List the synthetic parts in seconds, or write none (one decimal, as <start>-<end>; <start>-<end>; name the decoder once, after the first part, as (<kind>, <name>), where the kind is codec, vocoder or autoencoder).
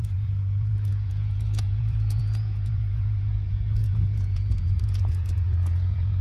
0.0-6.2 (vocoder, Vocos)